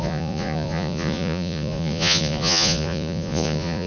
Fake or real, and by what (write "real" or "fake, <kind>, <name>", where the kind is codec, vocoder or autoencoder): fake, vocoder, Vocos